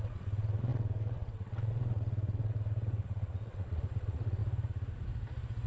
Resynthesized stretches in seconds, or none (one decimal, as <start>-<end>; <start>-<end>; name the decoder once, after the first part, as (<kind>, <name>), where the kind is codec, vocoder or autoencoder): 0.0-4.4 (vocoder, WaveNeXt)